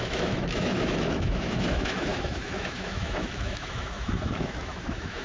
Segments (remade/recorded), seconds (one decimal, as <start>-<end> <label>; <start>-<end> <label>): 0.0-5.2 remade